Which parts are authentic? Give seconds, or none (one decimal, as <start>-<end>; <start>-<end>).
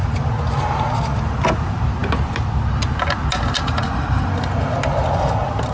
0.0-3.7; 4.3-5.7